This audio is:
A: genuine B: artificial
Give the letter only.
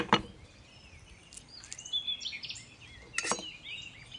A